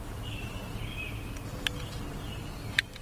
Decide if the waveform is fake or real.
real